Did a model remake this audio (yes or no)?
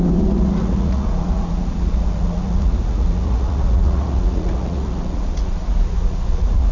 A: yes